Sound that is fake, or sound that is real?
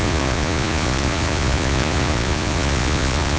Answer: fake